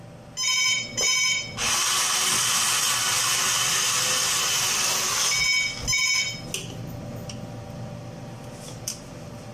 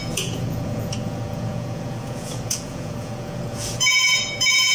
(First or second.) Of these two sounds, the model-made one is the second